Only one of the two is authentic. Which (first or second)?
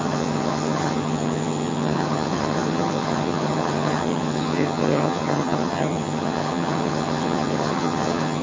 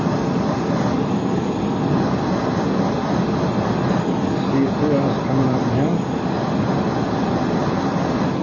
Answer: second